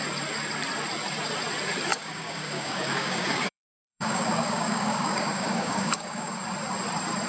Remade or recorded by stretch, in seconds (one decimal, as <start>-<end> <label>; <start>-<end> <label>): 0.0-1.9 recorded; 1.9-6.3 remade; 6.3-7.3 recorded